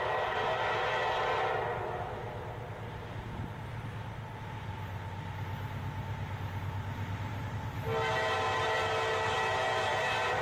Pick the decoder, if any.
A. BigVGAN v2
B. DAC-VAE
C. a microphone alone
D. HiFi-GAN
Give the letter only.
C